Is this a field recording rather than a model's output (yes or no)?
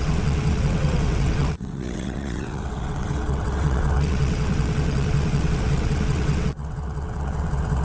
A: no